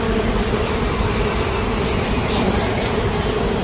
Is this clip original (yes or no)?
no